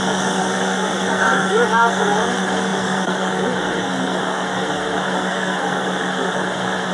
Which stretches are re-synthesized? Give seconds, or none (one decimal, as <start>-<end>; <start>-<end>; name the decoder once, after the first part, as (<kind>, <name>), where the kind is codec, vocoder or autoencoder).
0.0-6.9 (codec, SNAC)